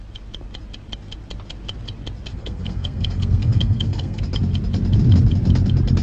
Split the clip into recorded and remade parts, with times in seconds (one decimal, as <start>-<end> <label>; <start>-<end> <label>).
0.0-2.3 recorded; 2.3-4.2 remade; 4.2-6.0 recorded